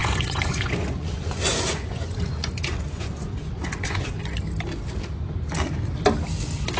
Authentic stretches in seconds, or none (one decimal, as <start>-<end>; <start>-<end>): 4.1-6.8